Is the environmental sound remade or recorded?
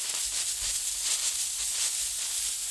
recorded